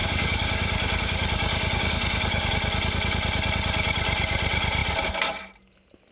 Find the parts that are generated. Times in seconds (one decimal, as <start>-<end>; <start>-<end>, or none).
0.0-2.5

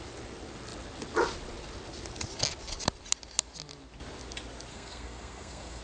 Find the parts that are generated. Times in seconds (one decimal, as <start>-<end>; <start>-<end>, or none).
4.7-5.8

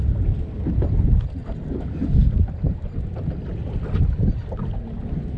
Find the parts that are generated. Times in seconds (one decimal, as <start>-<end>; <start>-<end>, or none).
1.4-4.6